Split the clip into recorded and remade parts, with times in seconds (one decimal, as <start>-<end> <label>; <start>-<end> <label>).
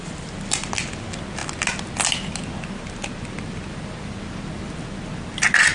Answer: 0.0-5.7 recorded